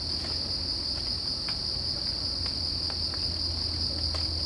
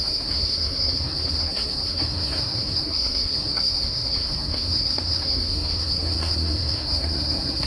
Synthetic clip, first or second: second